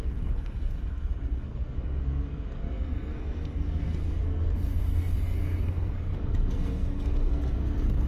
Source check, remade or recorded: remade